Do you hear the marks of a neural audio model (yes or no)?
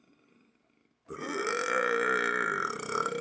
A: no